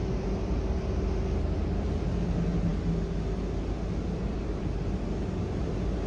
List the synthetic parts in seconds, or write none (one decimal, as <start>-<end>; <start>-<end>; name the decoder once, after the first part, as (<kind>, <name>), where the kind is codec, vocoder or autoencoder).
none